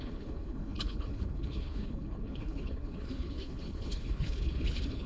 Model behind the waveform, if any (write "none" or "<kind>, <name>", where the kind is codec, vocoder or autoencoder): codec, HILCodec